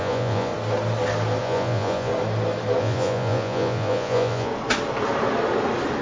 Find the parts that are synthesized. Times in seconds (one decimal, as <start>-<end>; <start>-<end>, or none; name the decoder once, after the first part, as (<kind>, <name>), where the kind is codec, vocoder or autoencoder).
0.0-0.5 (vocoder, Vocos); 1.4-2.1; 2.8-4.5